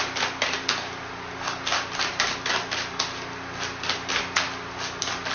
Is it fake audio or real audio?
real